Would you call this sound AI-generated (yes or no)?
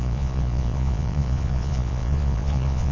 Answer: yes